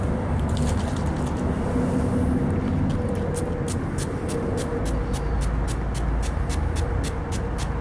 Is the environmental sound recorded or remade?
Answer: recorded